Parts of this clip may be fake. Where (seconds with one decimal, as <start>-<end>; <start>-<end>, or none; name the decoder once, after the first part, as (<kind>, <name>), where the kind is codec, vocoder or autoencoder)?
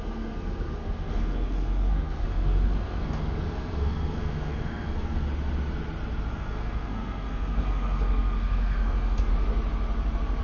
0.0-5.3 (codec, SNAC); 6.3-9.3